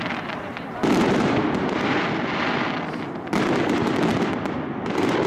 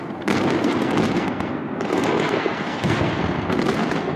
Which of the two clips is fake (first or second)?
second